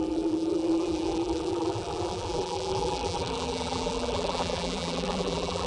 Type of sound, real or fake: fake